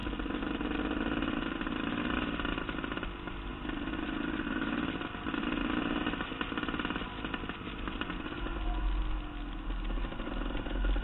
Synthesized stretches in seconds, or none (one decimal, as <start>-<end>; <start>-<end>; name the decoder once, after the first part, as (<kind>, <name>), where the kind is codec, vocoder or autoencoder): 0.0-2.0 (vocoder, BigVGAN v2); 3.5-8.1